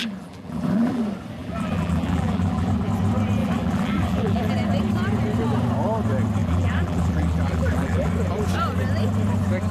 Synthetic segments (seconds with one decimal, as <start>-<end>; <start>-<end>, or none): 0.0-1.0; 1.4-2.7; 3.4-4.5; 6.4-8.1